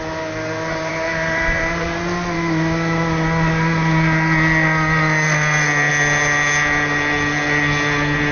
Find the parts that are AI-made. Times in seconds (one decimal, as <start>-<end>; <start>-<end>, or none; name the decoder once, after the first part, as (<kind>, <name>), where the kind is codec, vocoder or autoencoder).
none